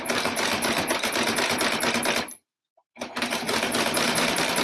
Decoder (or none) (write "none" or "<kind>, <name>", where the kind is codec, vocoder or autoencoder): vocoder, BigVGAN v2